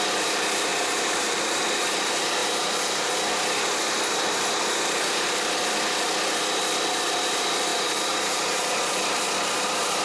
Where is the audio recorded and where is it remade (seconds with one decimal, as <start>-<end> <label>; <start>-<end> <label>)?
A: 0.0-0.7 recorded; 0.7-1.6 remade; 1.6-2.4 recorded; 2.4-3.1 remade; 3.1-7.7 recorded; 7.7-8.7 remade; 8.7-10.0 recorded